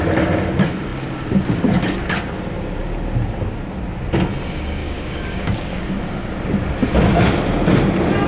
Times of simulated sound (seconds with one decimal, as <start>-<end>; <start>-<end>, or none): 4.8-6.0